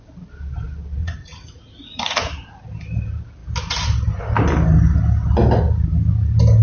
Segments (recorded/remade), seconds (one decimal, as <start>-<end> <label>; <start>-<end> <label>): 0.0-1.0 recorded; 1.0-2.3 remade; 2.3-6.6 recorded